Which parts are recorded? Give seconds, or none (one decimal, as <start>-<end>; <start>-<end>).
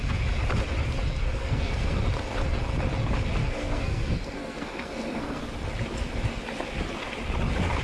0.0-1.4; 2.0-3.4; 5.4-7.8